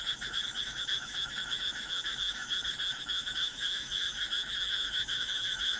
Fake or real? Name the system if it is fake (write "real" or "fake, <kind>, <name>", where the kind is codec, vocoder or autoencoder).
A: fake, autoencoder, DAC-VAE